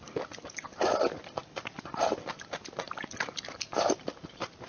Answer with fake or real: real